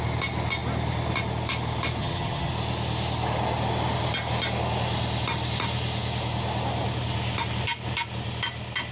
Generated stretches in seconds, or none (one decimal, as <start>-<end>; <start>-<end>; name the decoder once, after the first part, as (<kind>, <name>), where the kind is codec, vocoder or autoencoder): 2.0-2.5 (vocoder, HiFi-GAN)